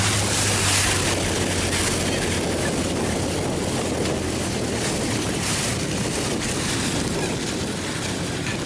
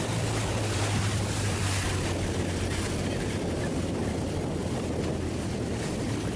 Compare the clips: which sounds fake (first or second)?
second